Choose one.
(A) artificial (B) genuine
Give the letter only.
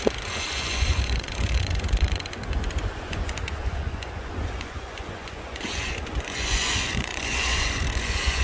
A